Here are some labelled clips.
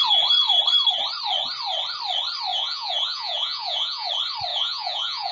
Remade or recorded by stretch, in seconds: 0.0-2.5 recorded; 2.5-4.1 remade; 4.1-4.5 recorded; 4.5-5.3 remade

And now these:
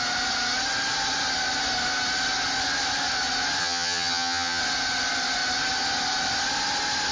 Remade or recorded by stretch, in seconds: 0.0-3.6 recorded; 3.6-4.6 remade; 4.6-7.1 recorded

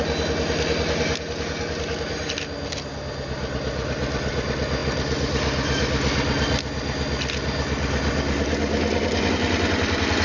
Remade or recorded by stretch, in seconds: 0.0-10.2 recorded

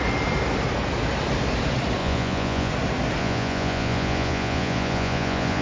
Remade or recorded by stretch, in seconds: 0.0-2.0 recorded; 2.0-2.7 remade; 2.7-3.2 recorded; 3.2-5.6 remade

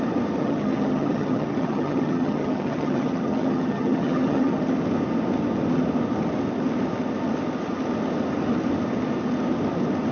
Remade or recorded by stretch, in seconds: 0.0-0.4 recorded; 0.4-4.7 remade; 4.7-10.1 recorded

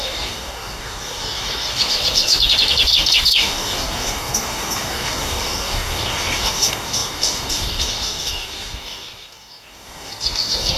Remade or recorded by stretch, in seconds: 0.0-10.8 remade

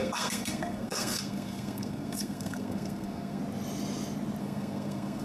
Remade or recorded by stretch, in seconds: 0.0-3.4 remade; 3.4-4.4 recorded; 4.4-5.2 remade